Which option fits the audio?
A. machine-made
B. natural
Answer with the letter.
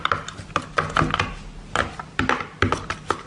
B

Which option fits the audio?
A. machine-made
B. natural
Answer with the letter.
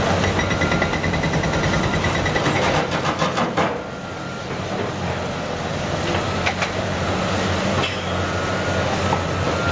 B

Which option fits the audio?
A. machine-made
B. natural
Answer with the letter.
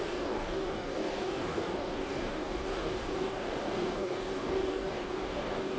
A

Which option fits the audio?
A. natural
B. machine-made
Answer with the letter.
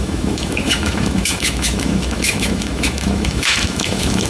B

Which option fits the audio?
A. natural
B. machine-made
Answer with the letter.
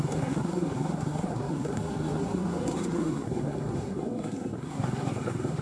B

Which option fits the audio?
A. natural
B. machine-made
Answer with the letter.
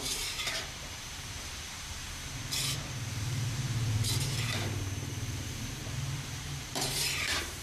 B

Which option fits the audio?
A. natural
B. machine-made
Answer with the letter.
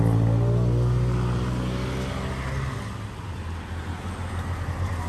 A